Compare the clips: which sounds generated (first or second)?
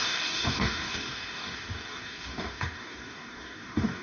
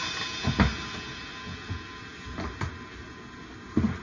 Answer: first